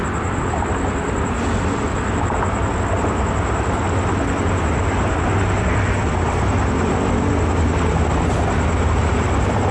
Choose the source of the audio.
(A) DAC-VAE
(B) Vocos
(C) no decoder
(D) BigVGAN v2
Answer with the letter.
C